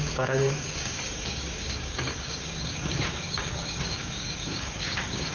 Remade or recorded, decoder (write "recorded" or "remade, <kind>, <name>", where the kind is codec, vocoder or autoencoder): remade, codec, DAC